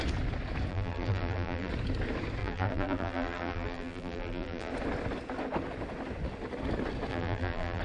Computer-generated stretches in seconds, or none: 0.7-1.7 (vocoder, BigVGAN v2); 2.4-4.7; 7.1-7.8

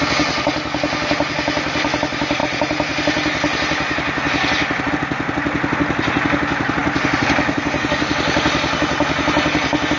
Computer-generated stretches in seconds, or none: none

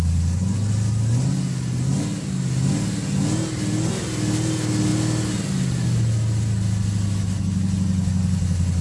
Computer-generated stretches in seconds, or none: none

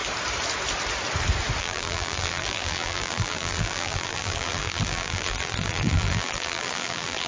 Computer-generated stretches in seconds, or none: 1.6-7.3 (vocoder, BigVGAN v2)

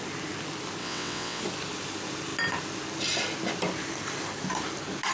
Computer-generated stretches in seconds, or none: 0.8-1.4 (vocoder, WaveNeXt)

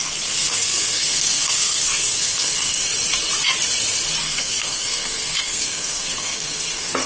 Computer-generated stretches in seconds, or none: 0.0-2.8 (codec, SNAC); 4.2-7.1

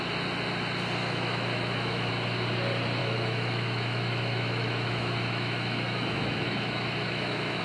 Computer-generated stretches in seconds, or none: 1.0-2.1 (autoencoder, DAC-VAE); 3.0-7.6

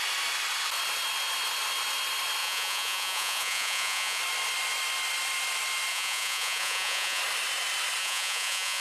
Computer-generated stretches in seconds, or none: 2.4-4.2 (vocoder, Vocos); 5.9-7.2; 8.0-8.8